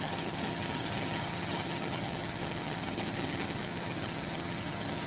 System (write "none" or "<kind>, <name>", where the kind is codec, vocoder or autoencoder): vocoder, HiFi-GAN